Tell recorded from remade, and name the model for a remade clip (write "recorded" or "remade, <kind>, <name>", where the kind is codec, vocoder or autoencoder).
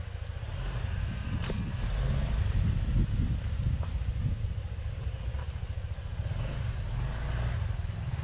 recorded